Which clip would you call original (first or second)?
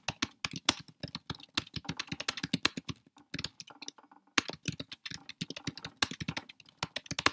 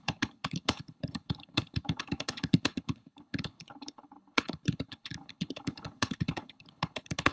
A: first